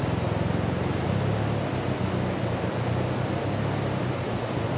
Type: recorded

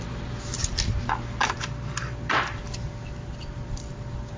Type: recorded